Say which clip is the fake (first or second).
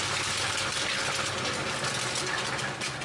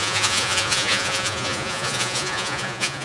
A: second